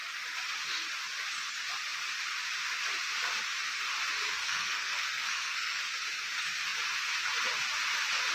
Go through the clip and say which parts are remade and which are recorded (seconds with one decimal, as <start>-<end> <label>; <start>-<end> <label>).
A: 0.0-4.4 recorded; 4.4-5.8 remade; 5.8-8.3 recorded